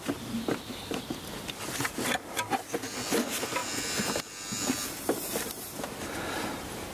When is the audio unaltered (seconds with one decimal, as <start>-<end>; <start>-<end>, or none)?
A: 0.0-6.9